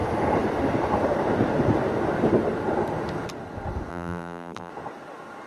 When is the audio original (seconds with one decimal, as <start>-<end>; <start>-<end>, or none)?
0.0-3.9; 4.7-5.5